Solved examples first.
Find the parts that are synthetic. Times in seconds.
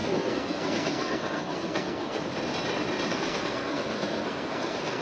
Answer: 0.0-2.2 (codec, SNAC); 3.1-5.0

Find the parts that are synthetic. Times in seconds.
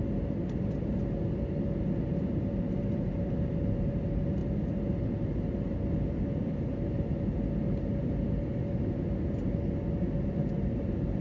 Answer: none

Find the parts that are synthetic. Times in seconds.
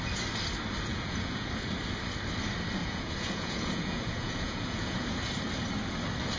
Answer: 0.9-1.5 (vocoder, Vocos); 2.8-5.2